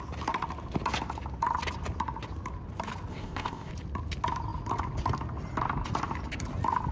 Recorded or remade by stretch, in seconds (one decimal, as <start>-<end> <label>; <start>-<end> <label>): 0.0-3.1 recorded; 3.1-3.7 remade; 3.7-6.9 recorded